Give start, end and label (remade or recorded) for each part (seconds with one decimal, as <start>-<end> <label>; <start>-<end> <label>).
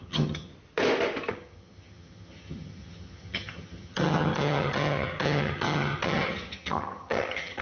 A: 0.0-0.5 remade; 0.5-1.3 recorded; 1.3-7.6 remade